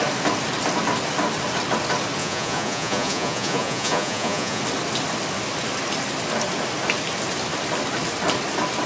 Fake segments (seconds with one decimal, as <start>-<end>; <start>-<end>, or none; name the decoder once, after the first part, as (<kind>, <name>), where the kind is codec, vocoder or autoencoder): 2.2-4.6 (vocoder, Vocos)